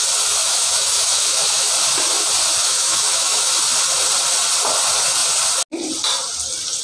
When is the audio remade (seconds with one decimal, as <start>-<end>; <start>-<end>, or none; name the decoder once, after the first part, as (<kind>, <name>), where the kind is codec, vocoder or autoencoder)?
0.4-1.7 (autoencoder, DAC-VAE); 2.6-3.5